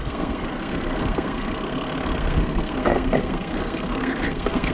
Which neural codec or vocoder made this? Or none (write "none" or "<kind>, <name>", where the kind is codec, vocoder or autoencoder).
codec, SNAC